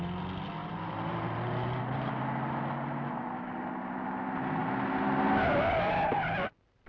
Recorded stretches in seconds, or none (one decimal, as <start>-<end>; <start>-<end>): 0.0-0.6; 2.1-6.9